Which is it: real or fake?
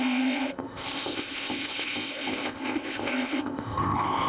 fake